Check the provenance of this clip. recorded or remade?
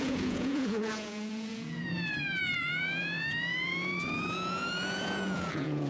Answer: remade